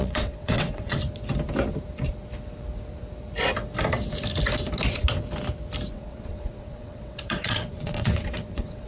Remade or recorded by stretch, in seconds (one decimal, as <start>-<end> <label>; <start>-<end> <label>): 0.0-1.0 remade; 1.0-5.9 recorded; 5.9-8.9 remade